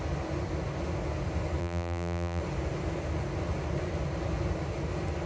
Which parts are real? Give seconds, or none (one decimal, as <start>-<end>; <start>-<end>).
0.0-1.6; 2.4-5.3